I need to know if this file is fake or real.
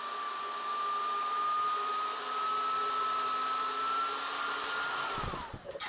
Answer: real